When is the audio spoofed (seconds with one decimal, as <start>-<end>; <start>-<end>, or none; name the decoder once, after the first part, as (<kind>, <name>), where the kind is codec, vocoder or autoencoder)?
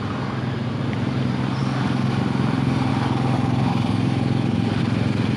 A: 1.6-2.2 (codec, DAC); 2.9-4.8